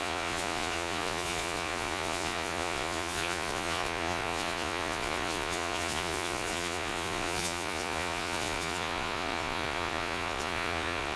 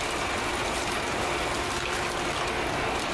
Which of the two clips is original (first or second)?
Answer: second